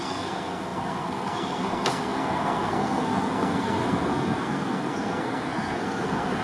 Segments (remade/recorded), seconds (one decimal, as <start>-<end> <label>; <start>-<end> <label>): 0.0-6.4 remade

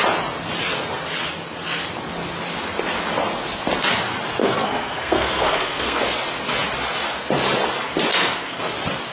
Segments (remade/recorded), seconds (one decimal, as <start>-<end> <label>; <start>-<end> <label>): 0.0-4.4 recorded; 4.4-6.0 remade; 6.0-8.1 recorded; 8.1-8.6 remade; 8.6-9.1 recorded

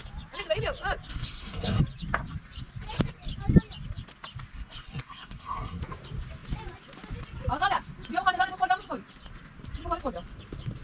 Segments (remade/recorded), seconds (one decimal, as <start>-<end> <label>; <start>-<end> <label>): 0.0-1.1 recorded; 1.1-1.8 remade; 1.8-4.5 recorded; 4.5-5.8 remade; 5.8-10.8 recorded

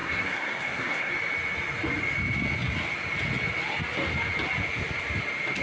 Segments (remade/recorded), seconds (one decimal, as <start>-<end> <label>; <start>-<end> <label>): 0.0-1.1 remade; 1.1-5.6 recorded

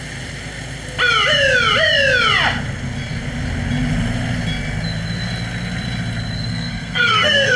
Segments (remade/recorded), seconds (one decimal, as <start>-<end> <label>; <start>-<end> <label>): 0.0-6.5 recorded; 6.5-7.6 remade

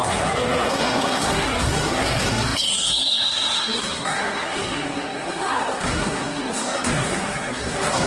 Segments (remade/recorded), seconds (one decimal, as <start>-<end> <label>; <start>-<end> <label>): 0.0-8.1 remade

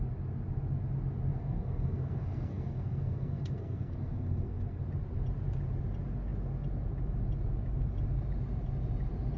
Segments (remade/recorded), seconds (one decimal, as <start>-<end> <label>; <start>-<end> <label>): 0.0-1.3 recorded; 1.3-4.8 remade; 4.8-9.4 recorded